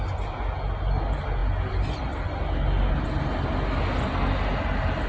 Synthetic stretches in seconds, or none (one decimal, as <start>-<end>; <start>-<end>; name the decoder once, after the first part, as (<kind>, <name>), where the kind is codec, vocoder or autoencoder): none